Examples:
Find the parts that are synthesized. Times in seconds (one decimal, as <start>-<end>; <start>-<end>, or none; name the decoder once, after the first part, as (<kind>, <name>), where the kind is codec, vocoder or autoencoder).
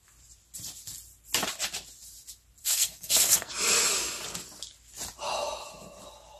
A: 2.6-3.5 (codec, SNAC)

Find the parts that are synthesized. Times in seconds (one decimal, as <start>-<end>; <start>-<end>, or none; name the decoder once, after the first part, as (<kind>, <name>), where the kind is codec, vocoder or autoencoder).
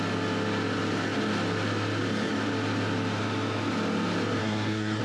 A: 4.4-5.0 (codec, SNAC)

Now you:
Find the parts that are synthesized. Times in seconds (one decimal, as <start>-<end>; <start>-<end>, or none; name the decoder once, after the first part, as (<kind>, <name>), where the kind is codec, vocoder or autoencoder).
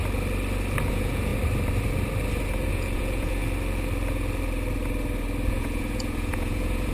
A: 0.9-1.3 (vocoder, Vocos); 2.7-3.4; 5.5-6.9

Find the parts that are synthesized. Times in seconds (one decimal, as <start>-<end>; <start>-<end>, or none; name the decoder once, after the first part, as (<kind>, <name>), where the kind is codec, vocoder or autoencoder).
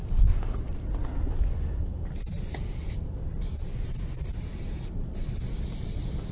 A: 0.6-1.0 (vocoder, BigVGAN v2); 1.8-6.3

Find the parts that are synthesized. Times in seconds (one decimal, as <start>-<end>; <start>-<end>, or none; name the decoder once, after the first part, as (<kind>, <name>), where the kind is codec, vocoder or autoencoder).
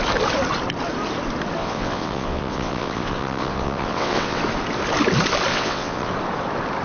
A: 1.6-4.4 (vocoder, WaveNeXt); 5.5-6.1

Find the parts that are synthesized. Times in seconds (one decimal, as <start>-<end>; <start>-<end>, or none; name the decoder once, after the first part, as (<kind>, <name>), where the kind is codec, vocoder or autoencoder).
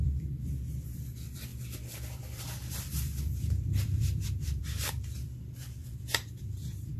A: 0.0-7.0 (vocoder, BigVGAN v2)